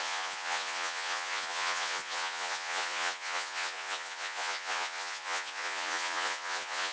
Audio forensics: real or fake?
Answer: fake